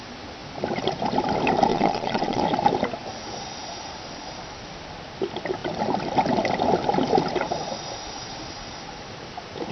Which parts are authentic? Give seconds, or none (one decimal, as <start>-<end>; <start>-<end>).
0.0-1.7; 2.4-9.7